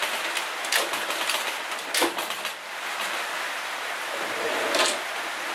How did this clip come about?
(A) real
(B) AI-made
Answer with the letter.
A